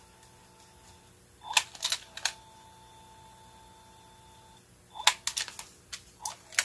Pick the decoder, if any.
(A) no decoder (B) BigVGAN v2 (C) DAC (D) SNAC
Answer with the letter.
A